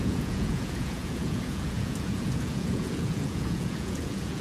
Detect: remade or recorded remade